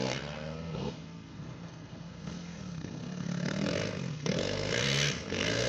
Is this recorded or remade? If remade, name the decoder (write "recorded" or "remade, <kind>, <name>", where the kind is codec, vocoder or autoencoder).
remade, codec, SNAC